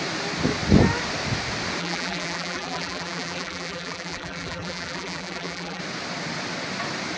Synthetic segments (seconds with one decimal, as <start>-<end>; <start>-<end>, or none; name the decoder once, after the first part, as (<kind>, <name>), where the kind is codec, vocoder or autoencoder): 1.8-5.8 (vocoder, BigVGAN v2)